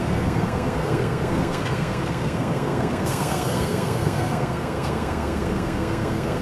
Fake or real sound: fake